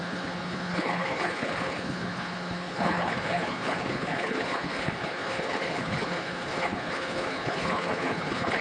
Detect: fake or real fake